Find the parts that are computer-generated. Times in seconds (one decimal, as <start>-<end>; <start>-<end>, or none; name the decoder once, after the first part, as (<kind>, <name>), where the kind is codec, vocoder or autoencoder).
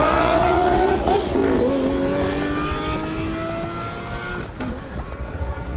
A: 0.0-1.4 (vocoder, Vocos); 4.9-5.8